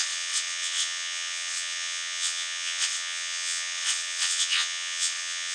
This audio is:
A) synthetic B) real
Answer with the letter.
A